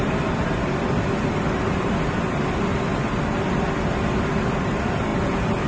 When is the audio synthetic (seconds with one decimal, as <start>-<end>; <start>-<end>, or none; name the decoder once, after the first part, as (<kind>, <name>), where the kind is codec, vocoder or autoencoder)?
none